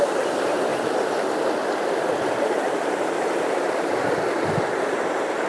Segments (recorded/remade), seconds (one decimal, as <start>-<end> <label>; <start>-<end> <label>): 0.0-0.7 remade; 0.7-2.6 recorded; 2.6-5.5 remade